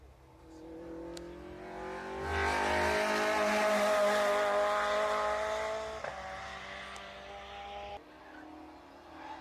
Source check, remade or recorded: recorded